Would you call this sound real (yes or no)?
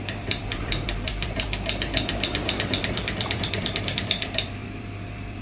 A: no